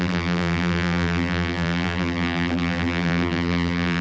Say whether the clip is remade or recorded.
remade